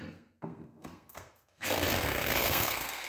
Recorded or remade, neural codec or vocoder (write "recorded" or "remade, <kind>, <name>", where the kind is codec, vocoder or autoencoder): remade, codec, SNAC